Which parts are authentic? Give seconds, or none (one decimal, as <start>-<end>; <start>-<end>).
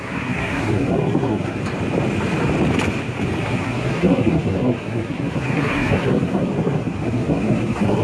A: 1.6-3.4